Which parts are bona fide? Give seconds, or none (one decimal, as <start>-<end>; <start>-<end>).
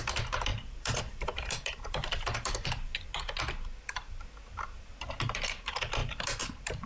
2.9-5.2